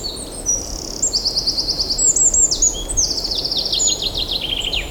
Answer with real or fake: real